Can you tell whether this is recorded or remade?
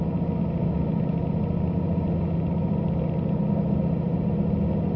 recorded